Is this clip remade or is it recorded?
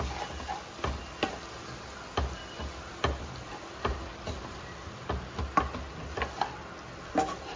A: recorded